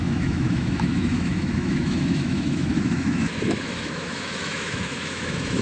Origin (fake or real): fake